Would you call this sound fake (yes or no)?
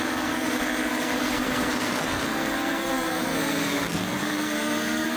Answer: yes